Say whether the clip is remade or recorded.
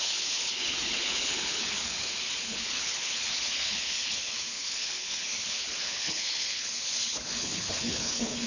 remade